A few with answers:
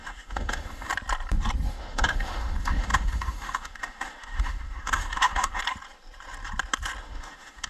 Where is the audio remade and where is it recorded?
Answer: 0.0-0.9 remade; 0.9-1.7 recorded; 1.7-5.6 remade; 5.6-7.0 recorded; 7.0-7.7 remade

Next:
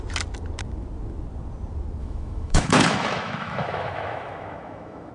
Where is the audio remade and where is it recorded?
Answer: 0.0-2.0 recorded; 2.0-5.1 remade

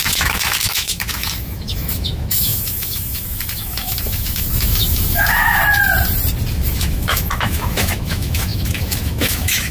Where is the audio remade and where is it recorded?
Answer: 0.0-5.6 remade; 5.6-6.5 recorded; 6.5-9.7 remade

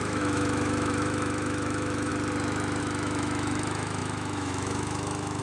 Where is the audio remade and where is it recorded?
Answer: 0.0-2.1 remade; 2.1-2.8 recorded; 2.8-5.4 remade

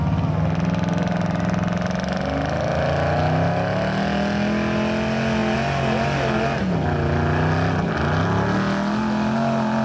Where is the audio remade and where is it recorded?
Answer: 0.0-9.8 recorded